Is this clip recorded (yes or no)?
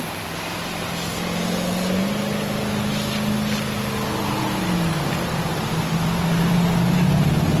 yes